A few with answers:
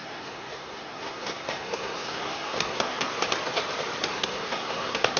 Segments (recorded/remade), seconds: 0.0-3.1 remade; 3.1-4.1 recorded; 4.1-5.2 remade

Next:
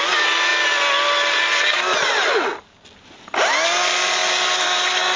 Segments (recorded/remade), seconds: 0.0-5.2 recorded